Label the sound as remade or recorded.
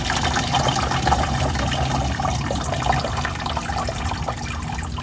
recorded